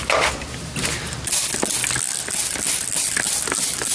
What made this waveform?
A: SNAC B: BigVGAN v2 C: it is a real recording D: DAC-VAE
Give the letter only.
C